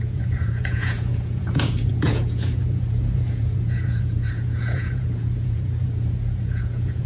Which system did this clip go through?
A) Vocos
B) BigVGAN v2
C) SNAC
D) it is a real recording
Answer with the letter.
A